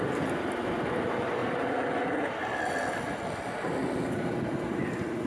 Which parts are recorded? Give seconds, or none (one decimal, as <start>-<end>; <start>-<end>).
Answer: 0.0-5.3